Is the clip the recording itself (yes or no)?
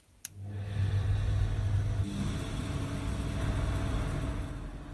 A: yes